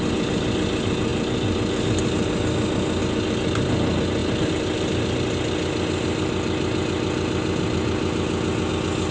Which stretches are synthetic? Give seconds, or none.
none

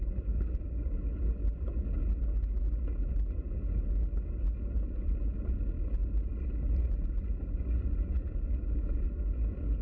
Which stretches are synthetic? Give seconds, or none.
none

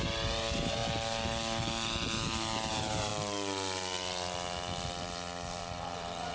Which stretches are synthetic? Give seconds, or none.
0.0-0.8; 2.7-3.1; 5.6-6.3

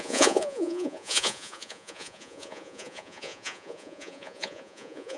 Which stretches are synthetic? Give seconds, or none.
0.0-5.2

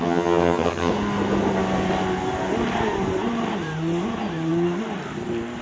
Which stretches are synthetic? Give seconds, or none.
0.0-0.9

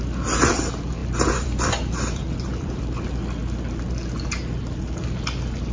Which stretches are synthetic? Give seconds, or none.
1.0-2.8